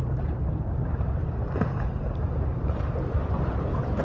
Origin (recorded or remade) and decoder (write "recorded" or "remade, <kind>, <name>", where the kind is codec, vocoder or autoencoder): remade, vocoder, BigVGAN v2